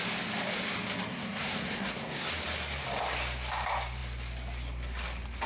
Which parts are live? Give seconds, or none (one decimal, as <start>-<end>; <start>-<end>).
0.0-1.1; 2.3-5.5